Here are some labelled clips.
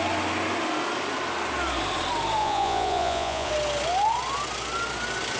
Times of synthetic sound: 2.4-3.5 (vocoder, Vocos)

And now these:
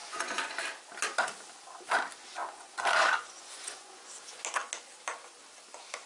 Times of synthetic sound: 0.0-0.6 (vocoder, Vocos); 2.4-4.1